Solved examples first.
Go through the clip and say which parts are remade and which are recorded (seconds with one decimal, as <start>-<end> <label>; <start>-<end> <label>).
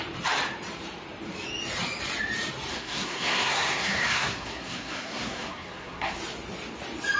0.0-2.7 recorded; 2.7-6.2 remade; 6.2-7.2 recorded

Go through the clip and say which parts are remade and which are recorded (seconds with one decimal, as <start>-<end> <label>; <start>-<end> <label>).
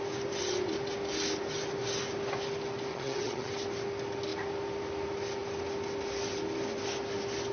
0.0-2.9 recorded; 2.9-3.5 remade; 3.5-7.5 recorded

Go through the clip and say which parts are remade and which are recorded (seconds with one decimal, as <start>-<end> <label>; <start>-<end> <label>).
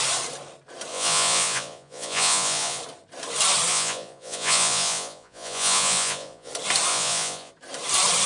0.0-0.9 recorded; 0.9-2.8 remade; 2.8-3.7 recorded; 3.7-6.5 remade; 6.5-6.9 recorded; 6.9-7.5 remade; 7.5-8.3 recorded